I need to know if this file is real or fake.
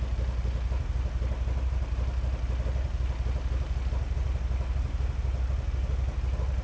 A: real